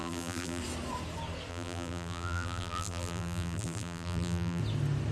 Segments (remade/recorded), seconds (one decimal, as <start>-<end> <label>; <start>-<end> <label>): 0.0-0.6 remade; 0.6-1.5 recorded; 1.5-4.6 remade; 4.6-5.1 recorded